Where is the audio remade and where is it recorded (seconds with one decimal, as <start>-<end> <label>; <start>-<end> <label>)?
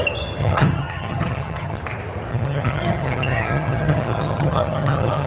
0.0-0.4 recorded; 0.4-1.8 remade; 1.8-2.3 recorded; 2.3-5.3 remade